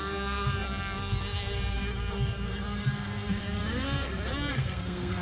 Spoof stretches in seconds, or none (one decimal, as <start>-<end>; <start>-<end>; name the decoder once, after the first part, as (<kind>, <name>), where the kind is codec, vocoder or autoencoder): 0.0-5.2 (codec, SNAC)